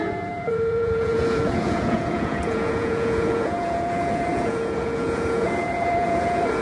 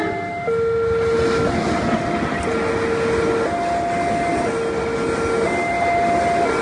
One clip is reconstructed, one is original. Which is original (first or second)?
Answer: second